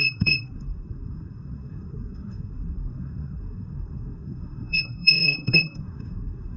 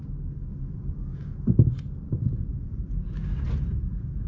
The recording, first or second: second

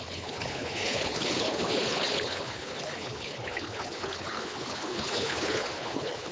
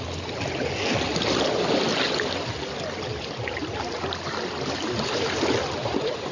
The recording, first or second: second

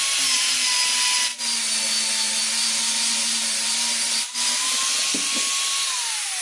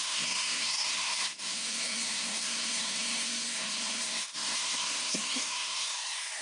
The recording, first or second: first